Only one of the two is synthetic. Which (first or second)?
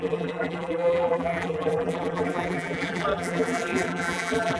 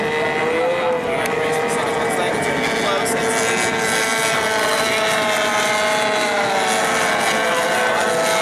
first